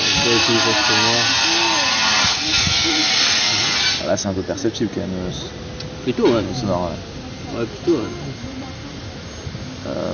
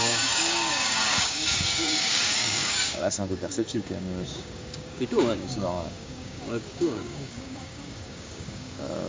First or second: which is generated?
second